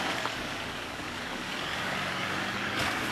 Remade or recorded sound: remade